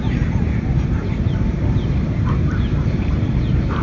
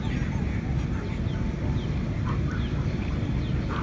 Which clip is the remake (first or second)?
first